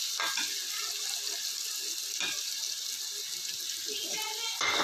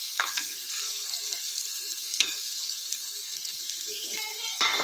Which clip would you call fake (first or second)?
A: second